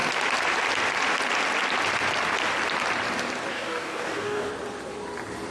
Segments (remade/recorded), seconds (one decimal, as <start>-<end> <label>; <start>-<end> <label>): 0.0-3.5 recorded; 3.5-4.5 remade; 4.5-5.5 recorded